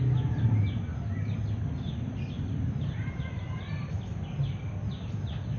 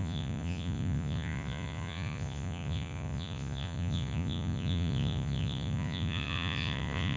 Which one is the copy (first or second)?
second